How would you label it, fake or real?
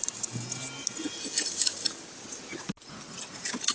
real